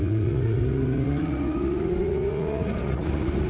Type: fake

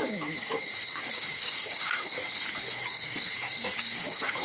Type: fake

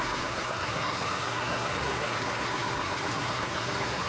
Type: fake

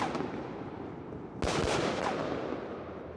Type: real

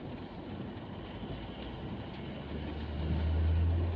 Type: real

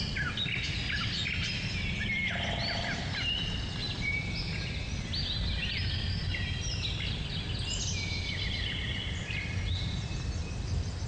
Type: real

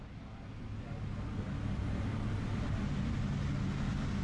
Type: real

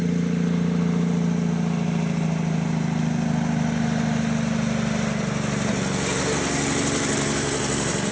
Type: real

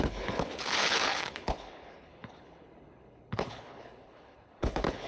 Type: fake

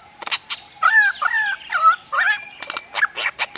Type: real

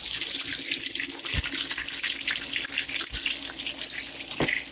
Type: real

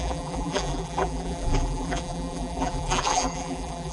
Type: fake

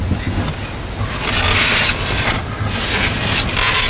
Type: real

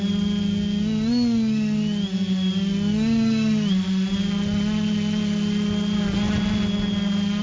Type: real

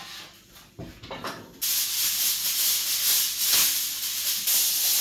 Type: real